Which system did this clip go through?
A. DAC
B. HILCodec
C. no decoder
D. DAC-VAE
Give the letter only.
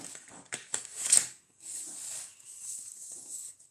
A